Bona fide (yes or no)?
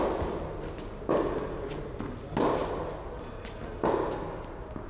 yes